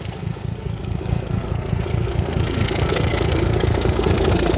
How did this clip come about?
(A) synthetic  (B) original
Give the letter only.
A